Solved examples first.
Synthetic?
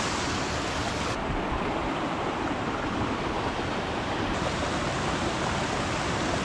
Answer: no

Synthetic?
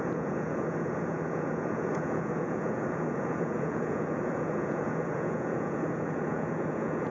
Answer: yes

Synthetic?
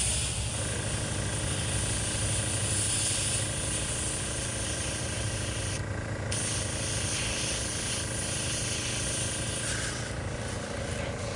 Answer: no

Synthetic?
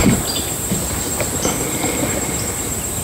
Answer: no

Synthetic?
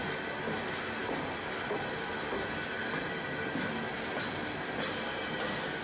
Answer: no